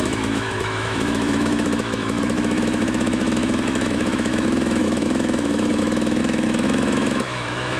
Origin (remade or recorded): remade